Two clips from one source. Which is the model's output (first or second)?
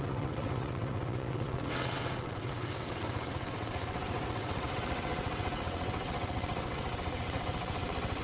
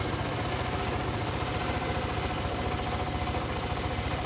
first